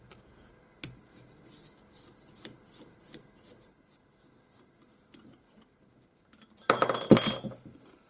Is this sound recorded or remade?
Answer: recorded